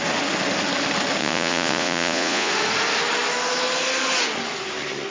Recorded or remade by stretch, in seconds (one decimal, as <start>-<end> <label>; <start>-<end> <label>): 0.0-1.2 recorded; 1.2-2.5 remade; 2.5-5.1 recorded